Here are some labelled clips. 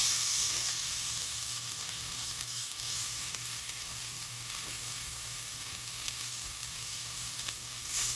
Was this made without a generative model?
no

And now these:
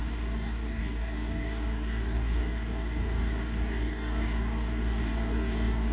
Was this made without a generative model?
no